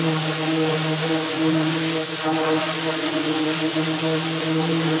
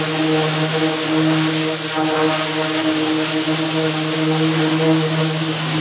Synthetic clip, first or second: first